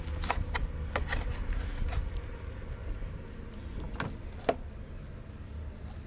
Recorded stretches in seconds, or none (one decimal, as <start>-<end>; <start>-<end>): 0.0-6.1